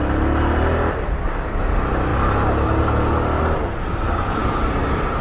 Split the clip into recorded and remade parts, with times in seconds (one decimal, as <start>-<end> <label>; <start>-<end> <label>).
0.0-5.2 recorded